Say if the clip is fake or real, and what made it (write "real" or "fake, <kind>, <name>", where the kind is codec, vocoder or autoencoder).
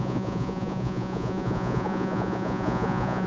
fake, vocoder, Vocos